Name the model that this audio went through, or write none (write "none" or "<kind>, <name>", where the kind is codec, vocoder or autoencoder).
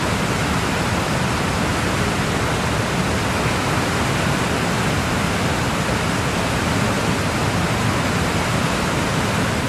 none